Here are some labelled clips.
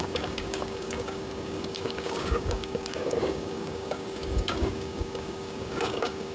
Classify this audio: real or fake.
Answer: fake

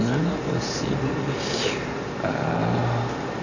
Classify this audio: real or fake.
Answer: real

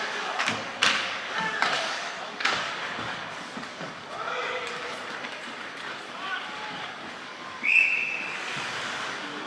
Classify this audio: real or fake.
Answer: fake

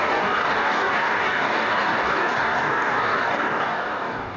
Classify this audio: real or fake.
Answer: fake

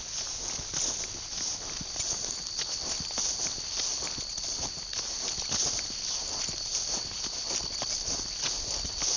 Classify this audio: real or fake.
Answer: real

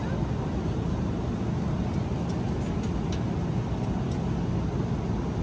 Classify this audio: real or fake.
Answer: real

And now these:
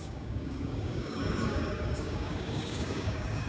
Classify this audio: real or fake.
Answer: fake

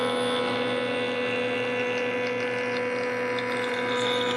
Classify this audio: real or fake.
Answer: real